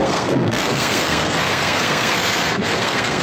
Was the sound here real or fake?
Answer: fake